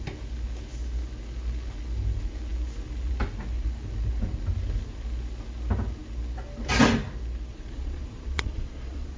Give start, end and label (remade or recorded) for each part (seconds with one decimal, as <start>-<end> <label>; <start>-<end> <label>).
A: 0.0-7.5 recorded; 7.5-9.2 remade